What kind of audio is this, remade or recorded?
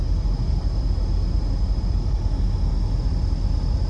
recorded